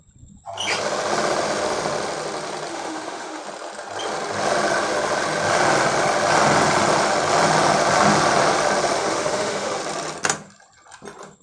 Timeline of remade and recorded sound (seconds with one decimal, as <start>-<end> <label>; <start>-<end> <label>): 0.0-2.7 recorded; 2.7-3.4 remade; 3.4-9.0 recorded; 9.0-9.8 remade; 9.8-11.4 recorded